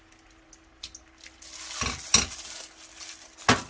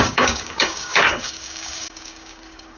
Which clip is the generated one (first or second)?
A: second